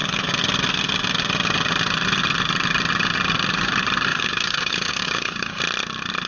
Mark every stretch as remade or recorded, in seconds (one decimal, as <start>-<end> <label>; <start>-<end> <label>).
0.0-4.1 recorded; 4.1-5.6 remade; 5.6-6.3 recorded